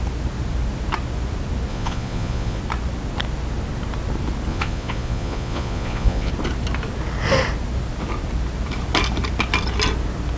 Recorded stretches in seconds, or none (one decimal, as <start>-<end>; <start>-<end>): 0.0-1.7; 2.6-4.5; 6.3-10.4